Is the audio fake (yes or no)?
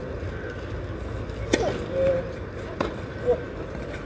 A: no